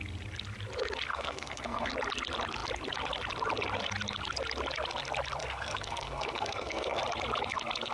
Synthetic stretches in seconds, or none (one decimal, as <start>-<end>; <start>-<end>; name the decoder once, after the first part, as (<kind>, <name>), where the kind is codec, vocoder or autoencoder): 1.1-1.9 (codec, SNAC); 5.4-7.0